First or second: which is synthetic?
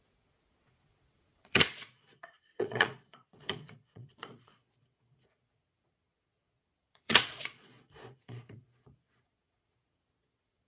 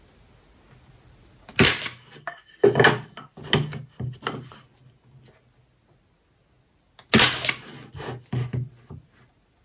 first